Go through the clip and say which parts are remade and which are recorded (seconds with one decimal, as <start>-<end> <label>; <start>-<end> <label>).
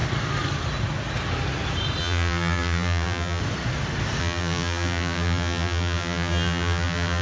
0.0-2.0 recorded; 2.0-3.4 remade; 3.4-4.2 recorded; 4.2-7.2 remade